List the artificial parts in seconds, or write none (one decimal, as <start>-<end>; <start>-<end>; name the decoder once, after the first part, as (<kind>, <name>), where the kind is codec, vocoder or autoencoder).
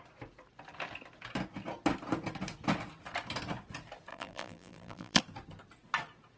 4.1-5.2 (vocoder, BigVGAN v2)